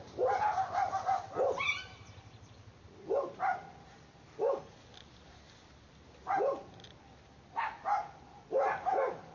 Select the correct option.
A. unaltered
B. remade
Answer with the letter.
A